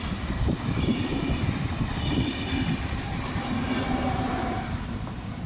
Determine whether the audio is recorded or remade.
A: remade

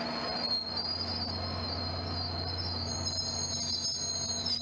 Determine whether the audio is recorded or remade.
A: recorded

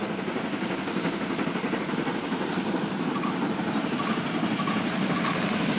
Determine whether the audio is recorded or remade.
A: recorded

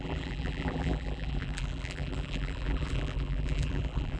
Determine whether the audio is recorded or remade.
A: remade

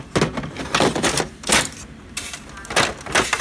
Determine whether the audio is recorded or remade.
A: recorded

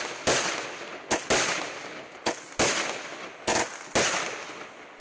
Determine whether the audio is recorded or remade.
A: recorded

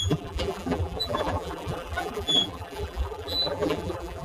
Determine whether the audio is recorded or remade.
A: remade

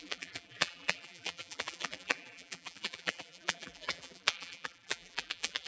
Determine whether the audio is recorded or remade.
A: remade